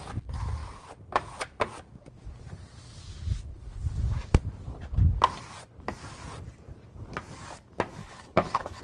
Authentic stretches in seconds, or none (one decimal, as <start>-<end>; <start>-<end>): 0.0-8.0